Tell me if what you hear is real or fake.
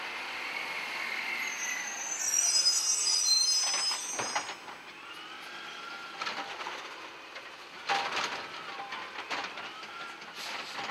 real